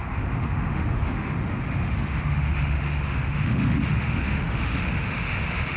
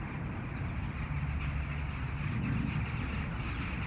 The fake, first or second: first